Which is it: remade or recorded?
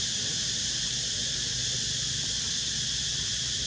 recorded